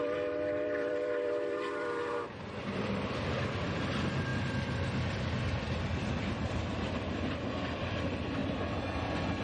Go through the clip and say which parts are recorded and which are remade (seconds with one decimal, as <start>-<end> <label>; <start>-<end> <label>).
0.0-4.3 remade; 4.3-6.2 recorded; 6.2-8.4 remade; 8.4-9.4 recorded

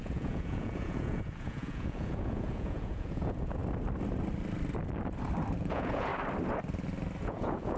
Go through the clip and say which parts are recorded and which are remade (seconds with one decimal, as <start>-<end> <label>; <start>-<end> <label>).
0.0-3.6 remade; 3.6-5.6 recorded; 5.6-6.1 remade; 6.1-7.2 recorded; 7.2-7.8 remade

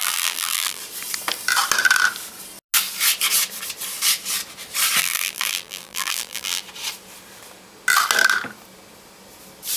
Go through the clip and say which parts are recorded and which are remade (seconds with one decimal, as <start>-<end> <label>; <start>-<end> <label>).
0.0-0.8 remade; 0.8-5.0 recorded; 5.0-6.6 remade; 6.6-9.8 recorded

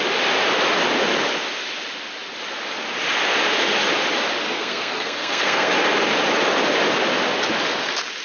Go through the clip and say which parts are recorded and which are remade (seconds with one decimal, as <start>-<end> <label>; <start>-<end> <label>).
0.0-4.4 recorded; 4.4-5.7 remade; 5.7-8.2 recorded

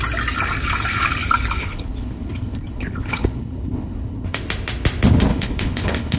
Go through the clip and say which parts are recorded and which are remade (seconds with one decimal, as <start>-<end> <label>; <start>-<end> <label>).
0.0-1.6 recorded; 1.6-4.4 remade; 4.4-5.3 recorded; 5.3-6.2 remade

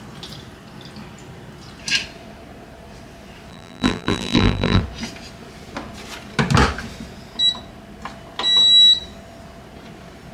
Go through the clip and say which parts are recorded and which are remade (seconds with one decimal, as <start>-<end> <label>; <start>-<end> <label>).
0.0-3.5 recorded; 3.5-4.8 remade; 4.8-10.3 recorded